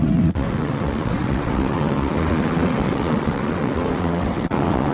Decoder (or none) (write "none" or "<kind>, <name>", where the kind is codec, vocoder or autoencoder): vocoder, WaveNeXt